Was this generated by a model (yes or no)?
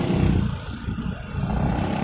no